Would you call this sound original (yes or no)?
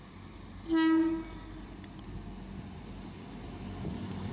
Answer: yes